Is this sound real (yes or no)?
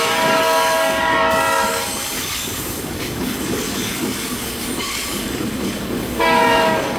no